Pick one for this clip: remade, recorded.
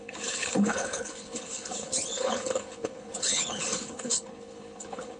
remade